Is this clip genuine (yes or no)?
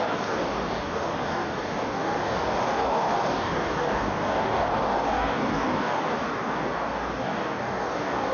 no